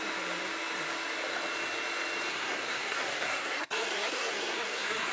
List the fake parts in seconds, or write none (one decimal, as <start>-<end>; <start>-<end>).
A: 2.3-5.1